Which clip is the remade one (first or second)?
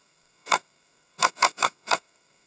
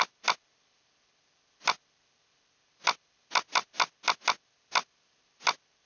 first